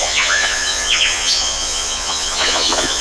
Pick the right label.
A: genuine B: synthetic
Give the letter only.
B